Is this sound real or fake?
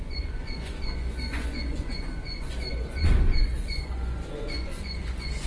fake